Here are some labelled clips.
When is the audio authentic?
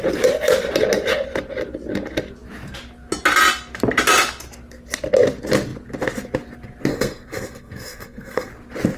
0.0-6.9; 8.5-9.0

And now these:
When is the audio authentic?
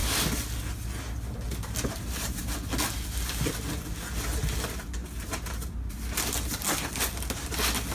0.0-7.9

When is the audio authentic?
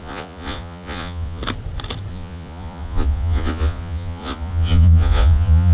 1.4-2.1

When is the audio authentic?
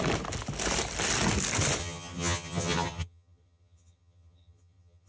0.0-1.8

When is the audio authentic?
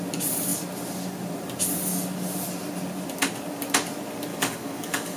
0.0-4.3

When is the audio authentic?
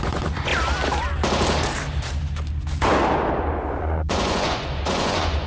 0.5-3.8